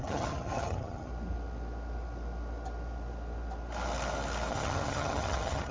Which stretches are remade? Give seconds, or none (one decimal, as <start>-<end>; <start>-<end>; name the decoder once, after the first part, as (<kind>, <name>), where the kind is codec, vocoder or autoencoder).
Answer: 0.0-1.1 (vocoder, HiFi-GAN); 4.5-5.7

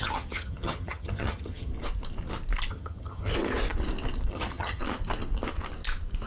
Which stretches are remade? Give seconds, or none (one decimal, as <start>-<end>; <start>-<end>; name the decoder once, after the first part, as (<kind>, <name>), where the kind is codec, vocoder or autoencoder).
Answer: 0.0-1.7 (vocoder, HiFi-GAN); 2.7-3.3; 4.3-4.8

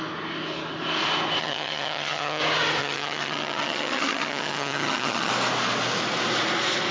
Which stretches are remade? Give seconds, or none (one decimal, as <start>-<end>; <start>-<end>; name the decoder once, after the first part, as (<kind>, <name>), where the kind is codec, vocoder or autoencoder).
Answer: 1.4-2.4 (vocoder, HiFi-GAN); 2.8-5.3

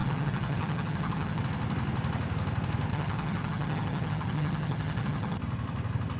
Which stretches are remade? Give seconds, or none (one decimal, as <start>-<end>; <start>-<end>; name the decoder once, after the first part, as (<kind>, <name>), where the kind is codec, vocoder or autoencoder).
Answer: 0.0-1.4 (vocoder, HiFi-GAN); 2.9-5.4

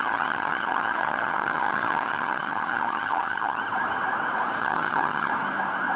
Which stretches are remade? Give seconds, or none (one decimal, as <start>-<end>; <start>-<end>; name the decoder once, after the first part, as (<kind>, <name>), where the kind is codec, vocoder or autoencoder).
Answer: 0.0-3.6 (vocoder, HiFi-GAN); 4.6-5.3